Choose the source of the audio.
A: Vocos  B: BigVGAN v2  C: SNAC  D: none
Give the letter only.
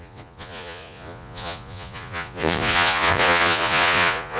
A